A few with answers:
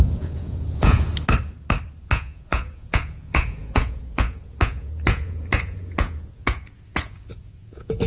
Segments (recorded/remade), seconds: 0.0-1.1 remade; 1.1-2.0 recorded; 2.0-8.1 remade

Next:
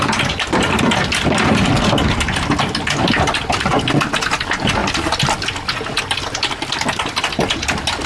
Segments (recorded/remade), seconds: 0.0-8.1 recorded

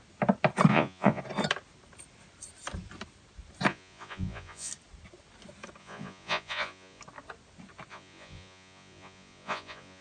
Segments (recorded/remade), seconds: 0.0-0.7 recorded; 0.7-1.2 remade; 1.2-3.7 recorded; 3.7-4.7 remade; 4.7-5.8 recorded; 5.8-7.0 remade; 7.0-7.9 recorded; 7.9-10.0 remade

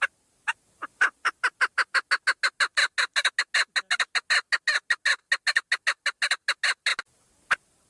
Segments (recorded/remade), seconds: 0.0-7.9 recorded